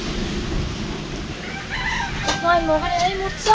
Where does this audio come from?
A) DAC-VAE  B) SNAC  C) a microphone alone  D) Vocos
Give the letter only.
C